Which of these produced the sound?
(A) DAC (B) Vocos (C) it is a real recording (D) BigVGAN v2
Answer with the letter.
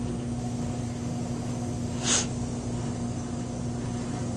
C